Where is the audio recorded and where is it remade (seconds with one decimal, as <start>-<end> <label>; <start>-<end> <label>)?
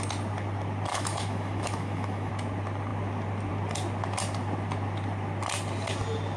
0.0-0.9 recorded; 0.9-2.3 remade; 2.3-6.4 recorded